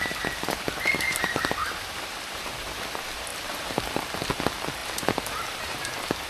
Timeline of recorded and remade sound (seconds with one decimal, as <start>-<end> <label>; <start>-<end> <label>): 0.0-1.6 recorded; 1.6-2.8 remade; 2.8-3.3 recorded; 3.3-3.9 remade; 3.9-4.8 recorded; 4.8-5.8 remade; 5.8-6.3 recorded